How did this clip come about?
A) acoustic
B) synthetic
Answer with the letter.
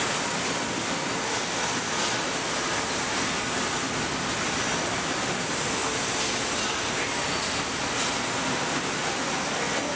A